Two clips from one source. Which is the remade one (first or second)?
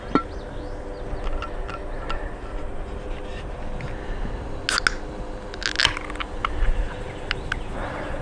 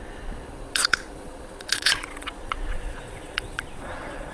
second